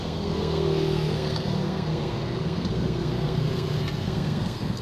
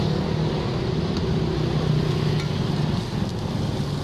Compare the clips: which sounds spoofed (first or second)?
first